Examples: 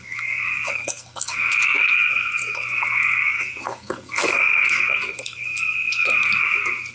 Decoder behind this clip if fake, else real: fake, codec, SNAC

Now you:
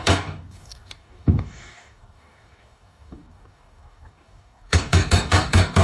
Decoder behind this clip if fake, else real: fake, codec, DAC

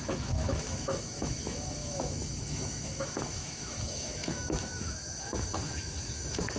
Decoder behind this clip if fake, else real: fake, autoencoder, DAC-VAE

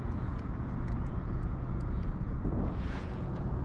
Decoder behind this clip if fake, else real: fake, vocoder, Vocos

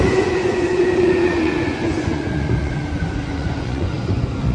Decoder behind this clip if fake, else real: fake, vocoder, Vocos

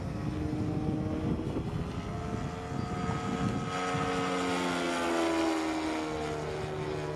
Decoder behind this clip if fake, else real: real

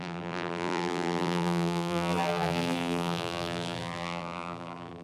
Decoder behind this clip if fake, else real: fake, vocoder, BigVGAN v2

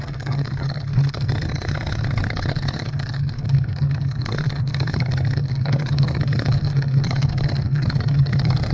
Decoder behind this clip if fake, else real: fake, codec, SNAC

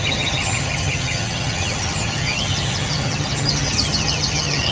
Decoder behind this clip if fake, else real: fake, vocoder, HiFi-GAN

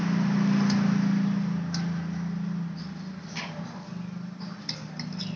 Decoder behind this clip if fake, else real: real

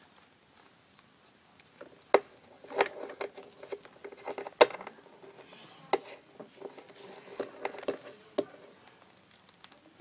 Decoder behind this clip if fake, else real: real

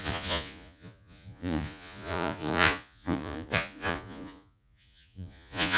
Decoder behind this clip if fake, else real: fake, vocoder, Vocos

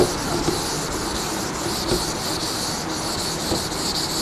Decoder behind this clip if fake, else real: real